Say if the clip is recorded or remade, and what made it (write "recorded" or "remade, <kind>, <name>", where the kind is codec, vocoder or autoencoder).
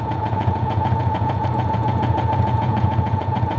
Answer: remade, vocoder, Vocos